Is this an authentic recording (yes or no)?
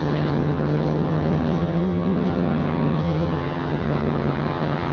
no